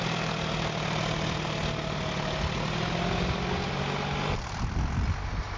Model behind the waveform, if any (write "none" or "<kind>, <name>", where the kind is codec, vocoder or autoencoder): none